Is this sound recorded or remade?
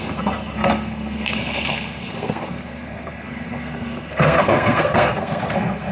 remade